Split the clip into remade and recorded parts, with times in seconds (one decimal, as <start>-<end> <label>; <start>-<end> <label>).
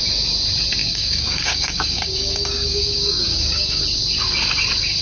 0.0-0.8 recorded; 0.8-3.8 remade; 3.8-5.0 recorded